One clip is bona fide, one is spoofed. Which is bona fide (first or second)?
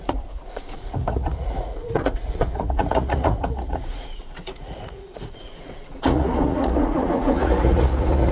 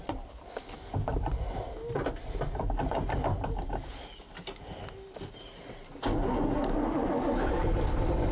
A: second